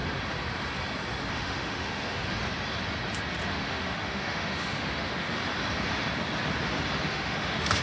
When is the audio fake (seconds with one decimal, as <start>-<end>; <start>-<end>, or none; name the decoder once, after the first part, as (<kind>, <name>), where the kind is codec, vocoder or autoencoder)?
1.3-2.3 (autoencoder, DAC-VAE); 3.5-5.4; 7.1-7.8